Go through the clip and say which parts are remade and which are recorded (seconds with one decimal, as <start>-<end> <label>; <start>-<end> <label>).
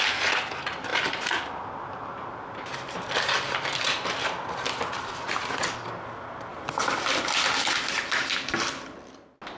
0.0-6.5 recorded; 6.5-7.2 remade; 7.2-9.6 recorded